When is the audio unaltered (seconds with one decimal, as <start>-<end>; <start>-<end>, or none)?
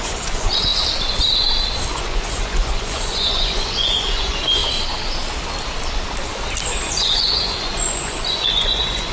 0.7-1.9; 4.6-6.8